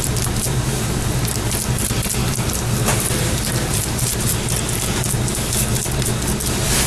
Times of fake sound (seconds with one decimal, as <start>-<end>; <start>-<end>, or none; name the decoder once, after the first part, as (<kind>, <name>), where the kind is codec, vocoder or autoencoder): 2.2-4.4 (vocoder, BigVGAN v2)